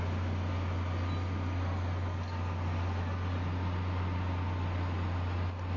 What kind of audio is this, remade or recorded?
recorded